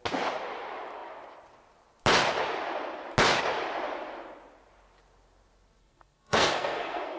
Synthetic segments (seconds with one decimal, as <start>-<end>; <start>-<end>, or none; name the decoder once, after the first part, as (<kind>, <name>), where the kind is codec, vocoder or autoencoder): 5.8-7.2 (codec, SNAC)